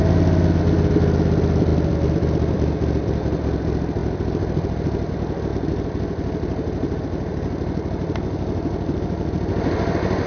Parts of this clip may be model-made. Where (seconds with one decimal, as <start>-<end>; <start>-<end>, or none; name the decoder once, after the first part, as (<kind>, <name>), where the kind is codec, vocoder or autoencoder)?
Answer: none